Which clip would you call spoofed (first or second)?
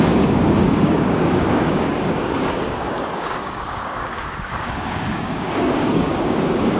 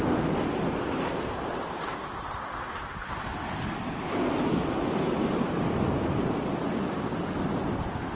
first